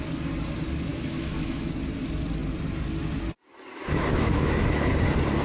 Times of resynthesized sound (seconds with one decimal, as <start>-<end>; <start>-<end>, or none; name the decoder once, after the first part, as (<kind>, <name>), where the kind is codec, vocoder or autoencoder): 0.9-1.7 (autoencoder, DAC-VAE); 3.7-4.9